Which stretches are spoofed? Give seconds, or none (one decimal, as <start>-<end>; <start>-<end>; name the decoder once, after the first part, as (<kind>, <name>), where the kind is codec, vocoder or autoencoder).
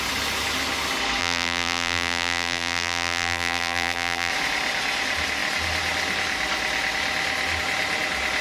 1.2-4.3 (vocoder, BigVGAN v2)